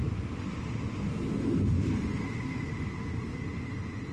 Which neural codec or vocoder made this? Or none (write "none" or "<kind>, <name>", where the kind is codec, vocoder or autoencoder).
none